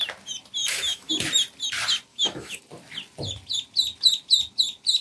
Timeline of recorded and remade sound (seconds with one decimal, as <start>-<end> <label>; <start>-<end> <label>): 0.0-0.6 recorded; 0.6-1.1 remade; 1.1-2.1 recorded; 2.1-2.6 remade; 2.6-5.0 recorded